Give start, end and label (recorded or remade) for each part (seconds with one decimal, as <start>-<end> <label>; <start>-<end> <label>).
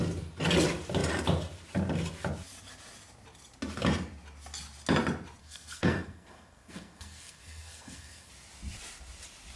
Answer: 0.0-5.4 recorded; 5.4-8.3 remade; 8.3-9.6 recorded